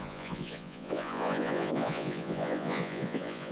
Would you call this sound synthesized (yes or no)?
yes